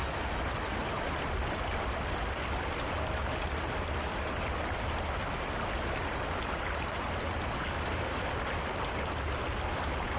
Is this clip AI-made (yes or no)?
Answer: no